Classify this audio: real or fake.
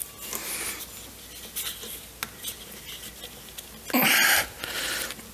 real